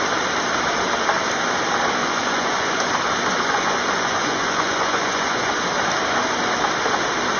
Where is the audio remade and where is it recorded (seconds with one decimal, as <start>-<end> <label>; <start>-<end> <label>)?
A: 0.0-2.0 recorded; 2.0-2.9 remade; 2.9-3.3 recorded; 3.3-5.5 remade; 5.5-7.4 recorded